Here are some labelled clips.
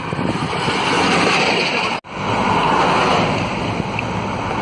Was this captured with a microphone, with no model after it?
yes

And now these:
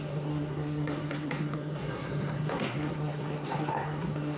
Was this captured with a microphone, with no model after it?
no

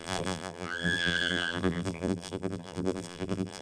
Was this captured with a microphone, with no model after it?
no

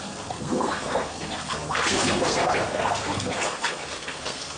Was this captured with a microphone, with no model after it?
no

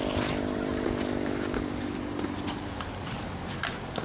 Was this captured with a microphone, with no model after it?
no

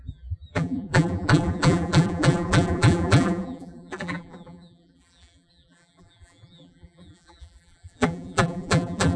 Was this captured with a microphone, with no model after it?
no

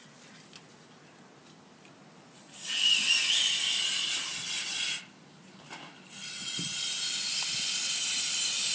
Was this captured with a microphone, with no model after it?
yes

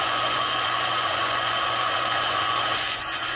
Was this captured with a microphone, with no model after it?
no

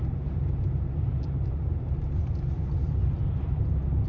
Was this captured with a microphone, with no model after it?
no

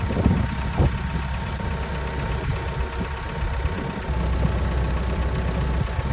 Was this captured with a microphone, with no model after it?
yes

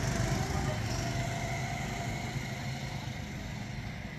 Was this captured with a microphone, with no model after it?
yes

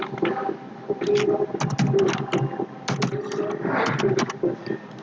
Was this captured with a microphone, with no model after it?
yes